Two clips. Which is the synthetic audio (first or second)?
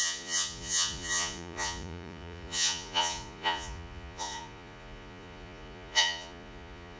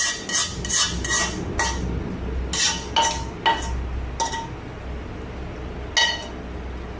first